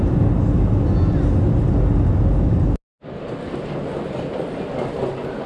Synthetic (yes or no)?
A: no